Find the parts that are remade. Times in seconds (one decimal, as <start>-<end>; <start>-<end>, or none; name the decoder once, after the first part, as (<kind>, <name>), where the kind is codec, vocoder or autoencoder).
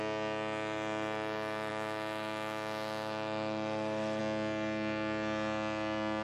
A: 1.7-4.2 (autoencoder, DAC-VAE)